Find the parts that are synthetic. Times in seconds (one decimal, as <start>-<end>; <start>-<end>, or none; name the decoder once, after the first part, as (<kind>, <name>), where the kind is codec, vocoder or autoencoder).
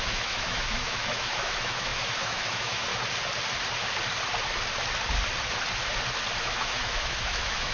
0.0-2.9 (autoencoder, DAC-VAE); 6.4-7.7